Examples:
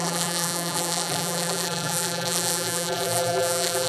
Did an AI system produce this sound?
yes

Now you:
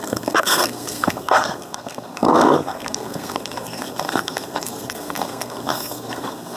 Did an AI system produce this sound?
yes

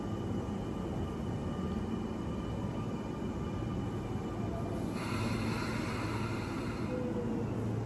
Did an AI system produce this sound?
no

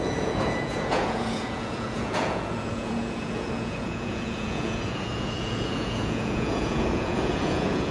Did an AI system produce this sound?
yes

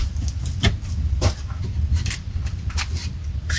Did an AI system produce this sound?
no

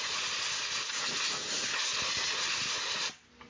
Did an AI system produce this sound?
no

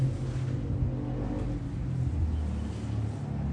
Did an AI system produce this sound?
no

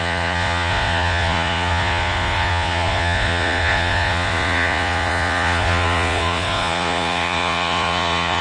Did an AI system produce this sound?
yes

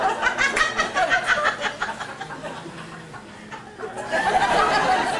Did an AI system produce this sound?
no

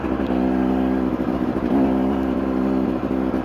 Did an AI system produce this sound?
no